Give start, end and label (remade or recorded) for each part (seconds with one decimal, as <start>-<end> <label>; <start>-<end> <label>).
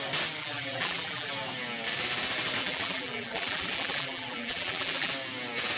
0.0-0.4 recorded; 0.4-1.3 remade; 1.3-2.6 recorded; 2.6-5.1 remade; 5.1-5.8 recorded